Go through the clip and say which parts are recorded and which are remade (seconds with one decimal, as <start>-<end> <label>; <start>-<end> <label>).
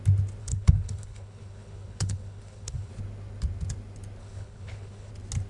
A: 0.0-0.4 recorded; 0.4-2.9 remade; 2.9-4.2 recorded; 4.2-5.1 remade; 5.1-5.5 recorded